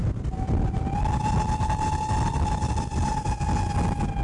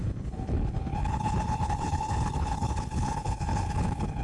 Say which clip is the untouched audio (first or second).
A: first